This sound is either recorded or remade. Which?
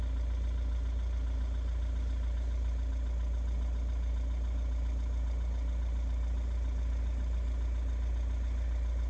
recorded